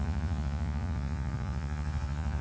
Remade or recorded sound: remade